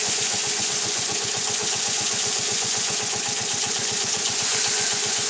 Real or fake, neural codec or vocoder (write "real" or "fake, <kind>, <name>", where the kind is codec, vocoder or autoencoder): fake, vocoder, Vocos